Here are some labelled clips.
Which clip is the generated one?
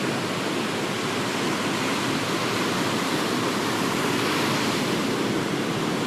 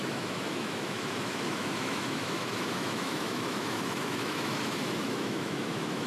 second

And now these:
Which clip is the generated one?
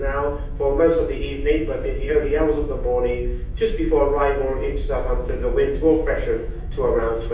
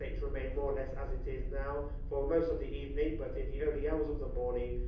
first